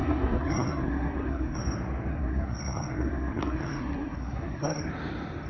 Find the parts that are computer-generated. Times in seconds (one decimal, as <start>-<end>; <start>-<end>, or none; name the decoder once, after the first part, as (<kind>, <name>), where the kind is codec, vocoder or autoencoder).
0.0-1.6 (codec, SNAC); 2.1-4.8